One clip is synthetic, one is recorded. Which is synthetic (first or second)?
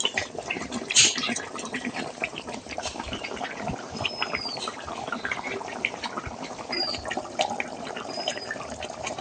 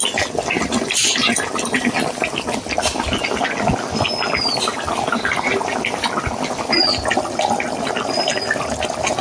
first